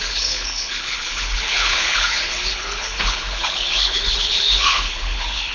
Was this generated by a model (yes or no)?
yes